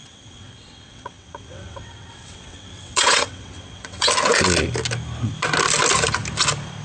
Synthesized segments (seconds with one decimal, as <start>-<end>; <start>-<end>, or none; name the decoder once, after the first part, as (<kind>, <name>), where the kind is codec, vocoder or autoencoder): 0.0-4.1 (vocoder, WaveNeXt)